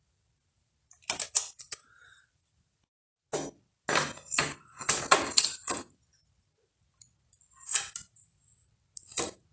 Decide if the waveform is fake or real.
real